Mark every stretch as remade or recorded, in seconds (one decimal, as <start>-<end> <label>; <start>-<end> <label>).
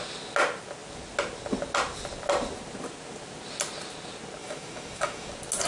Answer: 0.0-4.4 recorded; 4.4-5.3 remade; 5.3-5.7 recorded